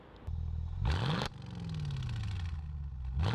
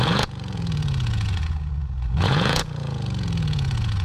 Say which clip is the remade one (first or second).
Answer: second